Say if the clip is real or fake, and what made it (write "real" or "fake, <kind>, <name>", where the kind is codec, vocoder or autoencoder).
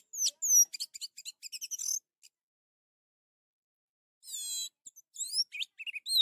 real